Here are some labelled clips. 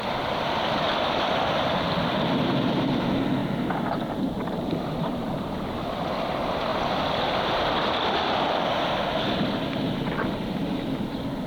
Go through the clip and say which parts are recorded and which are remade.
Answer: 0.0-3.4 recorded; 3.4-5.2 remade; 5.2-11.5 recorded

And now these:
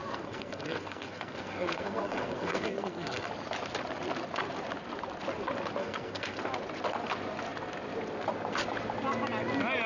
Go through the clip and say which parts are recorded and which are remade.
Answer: 0.0-3.3 remade; 3.3-5.8 recorded; 5.8-6.4 remade; 6.4-9.9 recorded

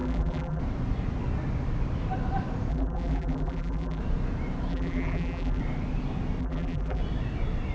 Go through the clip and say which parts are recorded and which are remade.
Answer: 0.0-0.6 remade; 0.6-2.7 recorded; 2.7-4.0 remade; 4.0-4.7 recorded; 4.7-5.6 remade; 5.6-6.4 recorded; 6.4-7.0 remade; 7.0-7.7 recorded

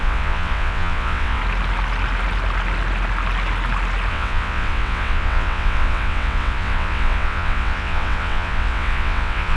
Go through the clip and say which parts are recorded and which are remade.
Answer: 0.0-1.4 remade; 1.4-4.1 recorded; 4.1-9.6 remade

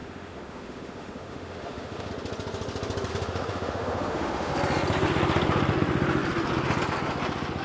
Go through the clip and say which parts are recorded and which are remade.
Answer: 0.0-2.1 remade; 2.1-3.1 recorded; 3.1-4.5 remade; 4.5-7.6 recorded

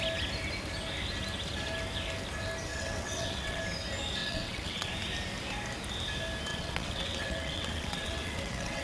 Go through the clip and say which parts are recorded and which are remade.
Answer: 0.0-2.7 recorded; 2.7-3.6 remade; 3.6-4.2 recorded; 4.2-4.9 remade; 4.9-6.5 recorded; 6.5-8.8 remade

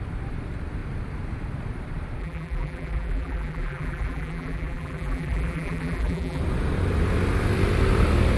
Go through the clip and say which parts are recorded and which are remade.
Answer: 0.0-2.2 recorded; 2.2-6.4 remade; 6.4-8.4 recorded

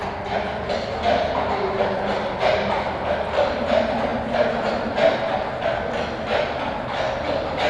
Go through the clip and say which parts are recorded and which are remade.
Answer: 0.0-7.7 recorded